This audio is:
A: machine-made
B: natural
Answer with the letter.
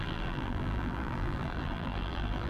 A